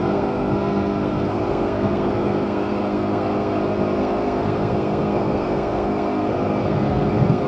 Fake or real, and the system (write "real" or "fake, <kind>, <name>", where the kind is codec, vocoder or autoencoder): fake, codec, SNAC